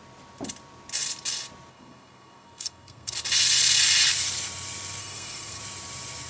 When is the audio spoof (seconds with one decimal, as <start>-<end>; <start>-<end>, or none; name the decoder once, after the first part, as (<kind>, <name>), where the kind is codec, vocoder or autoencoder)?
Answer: 1.7-3.1 (codec, SNAC); 5.0-5.6